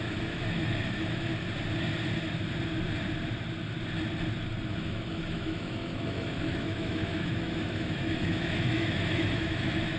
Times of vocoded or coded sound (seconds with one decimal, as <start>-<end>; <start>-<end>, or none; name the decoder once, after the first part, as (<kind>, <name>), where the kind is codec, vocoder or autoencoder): 0.0-1.3 (autoencoder, DAC-VAE); 4.7-10.0